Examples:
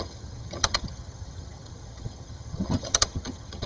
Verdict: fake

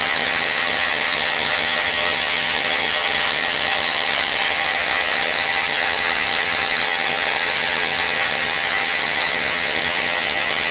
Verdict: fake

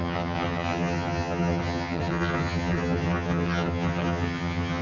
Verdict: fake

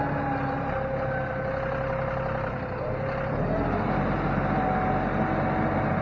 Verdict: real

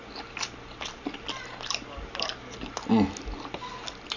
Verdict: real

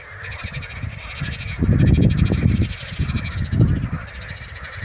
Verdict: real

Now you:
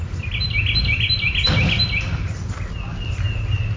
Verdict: real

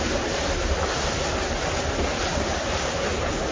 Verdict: real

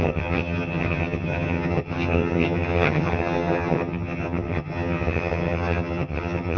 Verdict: fake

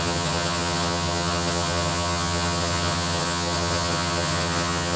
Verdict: fake